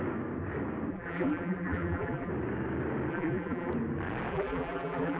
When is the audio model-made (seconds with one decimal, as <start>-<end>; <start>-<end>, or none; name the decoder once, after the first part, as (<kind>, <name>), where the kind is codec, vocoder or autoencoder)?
0.9-2.3 (vocoder, BigVGAN v2); 3.1-3.7; 4.3-5.2